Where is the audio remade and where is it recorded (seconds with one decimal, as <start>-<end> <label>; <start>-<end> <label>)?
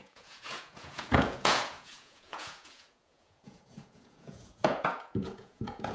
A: 0.0-5.9 remade